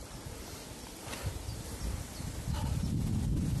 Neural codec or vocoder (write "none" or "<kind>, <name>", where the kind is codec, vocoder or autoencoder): none